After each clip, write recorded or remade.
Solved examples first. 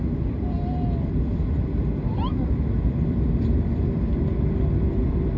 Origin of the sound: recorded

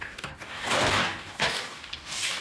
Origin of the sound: remade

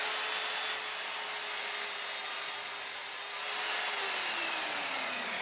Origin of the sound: recorded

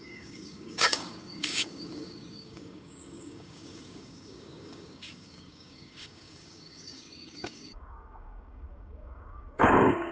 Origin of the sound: remade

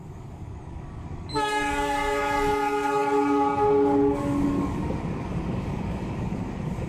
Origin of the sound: remade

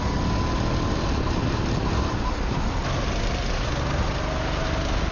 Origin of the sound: recorded